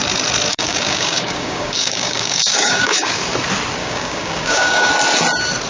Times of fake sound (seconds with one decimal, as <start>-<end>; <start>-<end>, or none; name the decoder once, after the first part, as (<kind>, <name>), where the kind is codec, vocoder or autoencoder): 0.5-3.2 (codec, DAC); 3.8-4.9